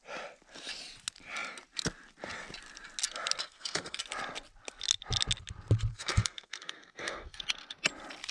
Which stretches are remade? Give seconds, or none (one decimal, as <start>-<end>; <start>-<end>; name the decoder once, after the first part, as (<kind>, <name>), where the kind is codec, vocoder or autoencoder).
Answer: 3.4-4.0 (codec, SNAC); 5.9-7.4